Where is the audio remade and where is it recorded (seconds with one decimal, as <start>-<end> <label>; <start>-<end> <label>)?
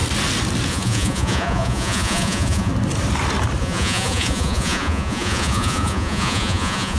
0.0-0.7 recorded; 0.7-2.7 remade; 2.7-3.6 recorded; 3.6-7.0 remade